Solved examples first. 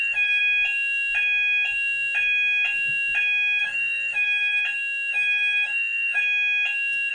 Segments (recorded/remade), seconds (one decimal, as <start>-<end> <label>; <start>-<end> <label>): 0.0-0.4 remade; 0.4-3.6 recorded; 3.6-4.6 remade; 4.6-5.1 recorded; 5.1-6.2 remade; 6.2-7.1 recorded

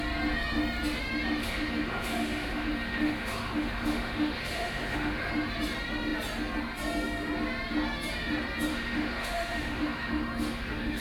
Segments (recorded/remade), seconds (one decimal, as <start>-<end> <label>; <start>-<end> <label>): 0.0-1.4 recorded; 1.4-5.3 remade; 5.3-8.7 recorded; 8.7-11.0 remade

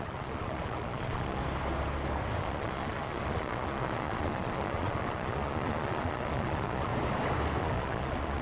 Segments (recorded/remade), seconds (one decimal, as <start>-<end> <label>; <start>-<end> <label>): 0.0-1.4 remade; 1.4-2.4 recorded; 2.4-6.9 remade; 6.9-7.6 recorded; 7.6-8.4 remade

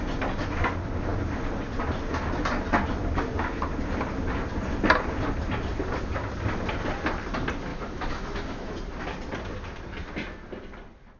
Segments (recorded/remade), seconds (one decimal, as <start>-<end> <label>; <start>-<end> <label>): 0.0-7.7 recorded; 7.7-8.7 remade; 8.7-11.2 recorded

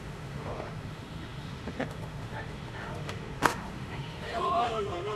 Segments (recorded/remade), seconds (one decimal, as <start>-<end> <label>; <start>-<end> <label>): 0.0-5.2 remade